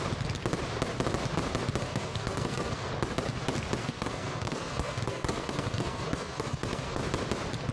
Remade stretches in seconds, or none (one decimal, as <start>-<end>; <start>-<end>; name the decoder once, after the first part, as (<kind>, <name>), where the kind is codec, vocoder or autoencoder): 1.8-2.9 (codec, SNAC); 3.8-7.0